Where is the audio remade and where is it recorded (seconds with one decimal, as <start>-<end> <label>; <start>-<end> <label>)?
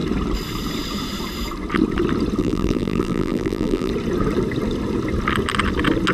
0.0-2.4 recorded; 2.4-3.9 remade; 3.9-6.1 recorded